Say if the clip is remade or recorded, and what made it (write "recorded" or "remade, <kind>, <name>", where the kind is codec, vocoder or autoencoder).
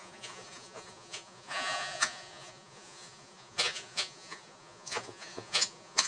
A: remade, vocoder, Vocos